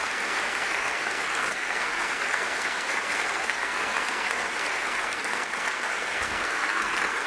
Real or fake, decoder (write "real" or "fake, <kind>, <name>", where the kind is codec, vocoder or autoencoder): fake, codec, SNAC